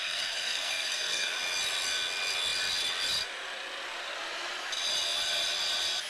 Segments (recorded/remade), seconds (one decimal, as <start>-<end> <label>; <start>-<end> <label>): 0.0-1.3 remade; 1.3-6.1 recorded